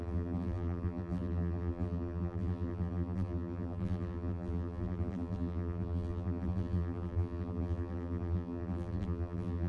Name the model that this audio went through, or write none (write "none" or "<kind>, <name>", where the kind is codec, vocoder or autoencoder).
vocoder, BigVGAN v2